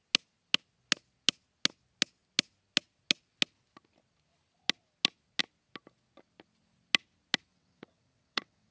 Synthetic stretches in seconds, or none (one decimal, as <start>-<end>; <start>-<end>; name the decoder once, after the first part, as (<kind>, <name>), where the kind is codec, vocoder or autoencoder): 7.5-8.7 (vocoder, WaveNeXt)